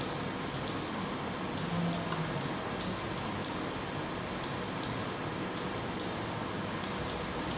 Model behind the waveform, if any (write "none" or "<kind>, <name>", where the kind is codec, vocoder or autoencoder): none